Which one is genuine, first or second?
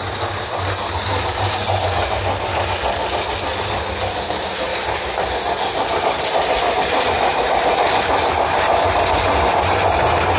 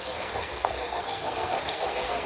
first